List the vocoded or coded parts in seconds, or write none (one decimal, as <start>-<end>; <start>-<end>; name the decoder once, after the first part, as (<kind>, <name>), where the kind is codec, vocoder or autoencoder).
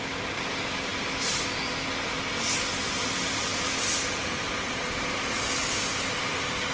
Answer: none